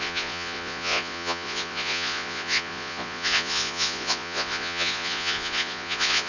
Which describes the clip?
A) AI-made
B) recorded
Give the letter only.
A